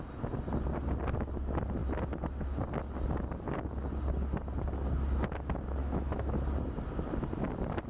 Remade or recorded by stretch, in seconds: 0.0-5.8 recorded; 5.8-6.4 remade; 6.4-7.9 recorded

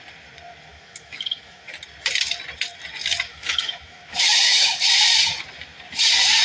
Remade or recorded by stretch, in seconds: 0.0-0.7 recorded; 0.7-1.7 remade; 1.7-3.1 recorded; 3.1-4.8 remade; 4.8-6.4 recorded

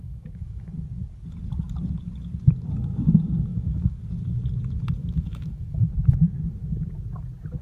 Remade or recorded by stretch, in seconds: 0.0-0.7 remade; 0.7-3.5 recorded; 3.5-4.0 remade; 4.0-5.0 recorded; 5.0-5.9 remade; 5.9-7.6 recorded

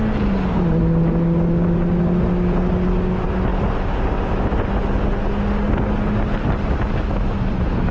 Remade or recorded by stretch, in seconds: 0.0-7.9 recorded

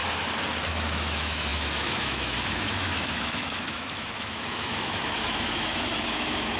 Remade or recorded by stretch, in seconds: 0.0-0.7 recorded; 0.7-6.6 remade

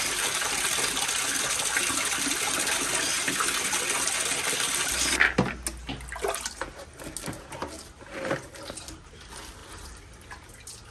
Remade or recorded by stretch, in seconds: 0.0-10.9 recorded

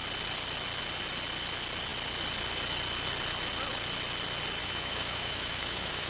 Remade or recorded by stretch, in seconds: 0.0-4.6 recorded; 4.6-6.1 remade